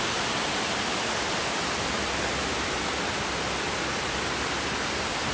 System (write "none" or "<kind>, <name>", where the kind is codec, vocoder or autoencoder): none